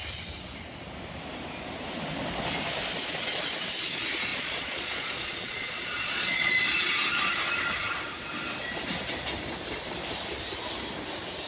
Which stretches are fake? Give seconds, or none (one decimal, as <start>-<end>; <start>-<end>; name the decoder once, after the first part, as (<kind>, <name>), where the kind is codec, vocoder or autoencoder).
4.3-6.5 (vocoder, Vocos)